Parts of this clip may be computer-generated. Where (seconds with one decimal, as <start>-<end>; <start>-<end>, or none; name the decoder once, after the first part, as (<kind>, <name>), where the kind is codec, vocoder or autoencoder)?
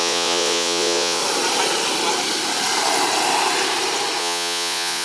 0.0-1.2 (vocoder, Vocos); 4.2-5.0